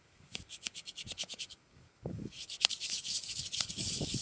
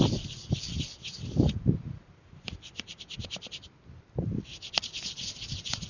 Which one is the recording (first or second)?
second